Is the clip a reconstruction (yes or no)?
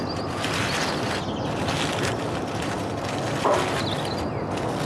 no